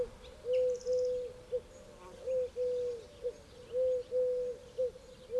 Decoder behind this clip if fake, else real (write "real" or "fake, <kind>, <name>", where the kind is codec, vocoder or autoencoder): real